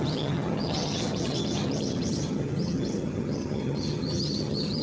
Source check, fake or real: fake